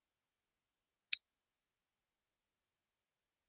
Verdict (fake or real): real